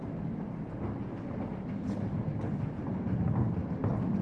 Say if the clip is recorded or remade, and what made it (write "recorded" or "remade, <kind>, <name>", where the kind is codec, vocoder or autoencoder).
recorded